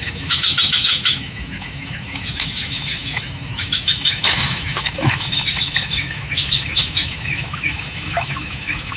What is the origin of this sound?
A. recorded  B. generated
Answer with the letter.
B